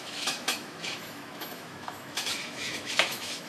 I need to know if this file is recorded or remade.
remade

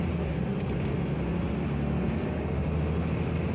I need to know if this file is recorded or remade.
recorded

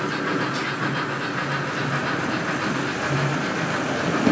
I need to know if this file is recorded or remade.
recorded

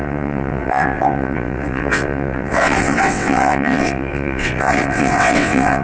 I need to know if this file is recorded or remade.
remade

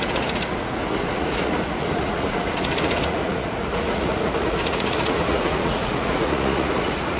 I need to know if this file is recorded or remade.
remade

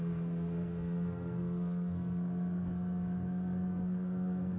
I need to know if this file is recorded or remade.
remade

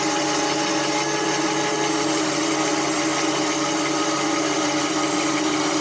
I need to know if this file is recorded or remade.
recorded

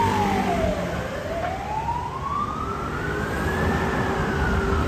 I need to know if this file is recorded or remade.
recorded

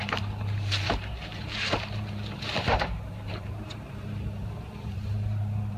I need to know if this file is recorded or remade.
remade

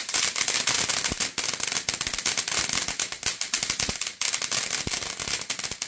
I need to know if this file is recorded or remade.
recorded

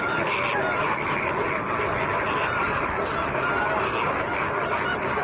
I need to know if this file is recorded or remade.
recorded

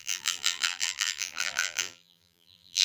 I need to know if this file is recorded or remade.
remade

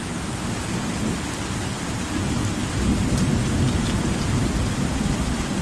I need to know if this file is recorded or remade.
recorded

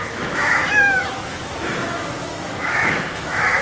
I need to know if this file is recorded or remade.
remade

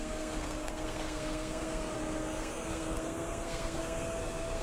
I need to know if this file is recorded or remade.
remade